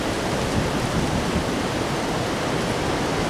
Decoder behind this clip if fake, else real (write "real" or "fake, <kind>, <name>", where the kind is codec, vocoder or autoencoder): real